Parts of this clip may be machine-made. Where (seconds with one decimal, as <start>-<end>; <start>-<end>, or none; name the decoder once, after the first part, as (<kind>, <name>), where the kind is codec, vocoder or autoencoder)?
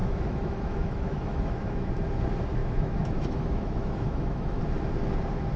0.0-1.9 (autoencoder, DAC-VAE); 2.6-4.6